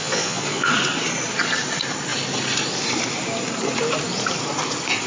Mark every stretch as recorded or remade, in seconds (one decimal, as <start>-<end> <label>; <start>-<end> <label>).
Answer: 0.0-0.7 remade; 0.7-5.1 recorded